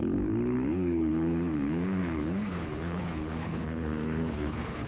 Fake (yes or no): yes